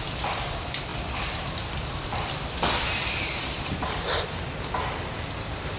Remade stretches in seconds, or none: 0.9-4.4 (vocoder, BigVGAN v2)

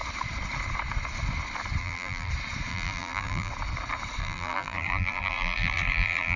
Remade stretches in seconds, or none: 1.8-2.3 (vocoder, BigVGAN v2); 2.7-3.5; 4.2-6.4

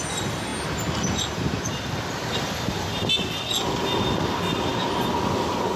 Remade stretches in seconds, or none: none

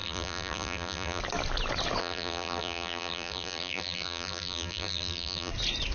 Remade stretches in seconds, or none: 0.0-1.2 (vocoder, BigVGAN v2); 2.0-5.5